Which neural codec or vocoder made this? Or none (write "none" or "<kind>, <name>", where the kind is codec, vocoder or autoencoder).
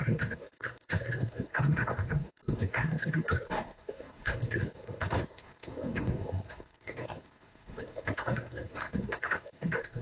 codec, SNAC